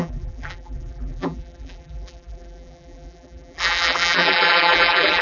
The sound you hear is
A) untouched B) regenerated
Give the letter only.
B